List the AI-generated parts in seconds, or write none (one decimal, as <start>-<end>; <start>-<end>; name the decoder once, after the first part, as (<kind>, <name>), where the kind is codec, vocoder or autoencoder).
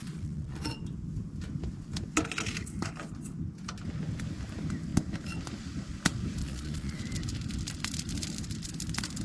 0.0-0.8 (vocoder, Vocos); 6.4-7.0